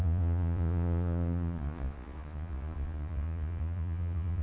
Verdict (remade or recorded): remade